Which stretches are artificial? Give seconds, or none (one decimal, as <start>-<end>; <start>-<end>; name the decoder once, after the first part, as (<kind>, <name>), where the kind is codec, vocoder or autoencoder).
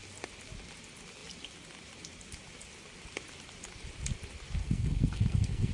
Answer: 4.6-5.7 (codec, SNAC)